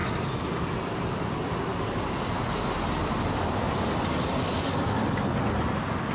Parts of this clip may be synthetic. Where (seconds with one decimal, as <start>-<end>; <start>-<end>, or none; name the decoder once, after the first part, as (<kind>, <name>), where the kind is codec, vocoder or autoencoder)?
none